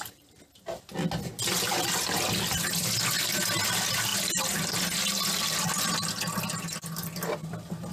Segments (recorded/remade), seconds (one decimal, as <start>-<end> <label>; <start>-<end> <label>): 0.0-7.9 recorded